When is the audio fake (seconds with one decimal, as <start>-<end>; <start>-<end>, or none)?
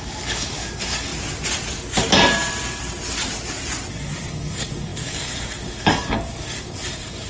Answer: 0.0-1.1; 3.9-7.3